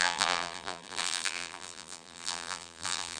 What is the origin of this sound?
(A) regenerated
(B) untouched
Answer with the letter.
A